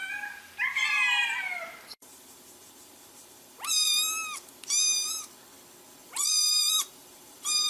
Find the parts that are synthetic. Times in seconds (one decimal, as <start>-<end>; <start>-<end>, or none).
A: 0.0-4.6; 6.0-7.7